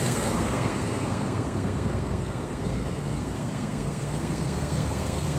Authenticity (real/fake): fake